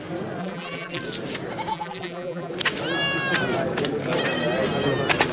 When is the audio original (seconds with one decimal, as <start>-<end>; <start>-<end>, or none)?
0.0-0.4; 1.0-1.7; 2.5-5.3